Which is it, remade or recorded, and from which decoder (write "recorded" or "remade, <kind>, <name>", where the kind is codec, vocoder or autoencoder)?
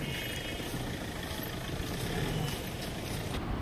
recorded